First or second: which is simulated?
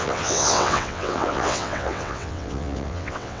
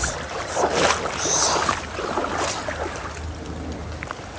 first